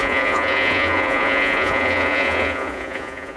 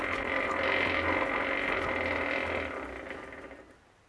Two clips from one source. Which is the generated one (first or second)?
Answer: first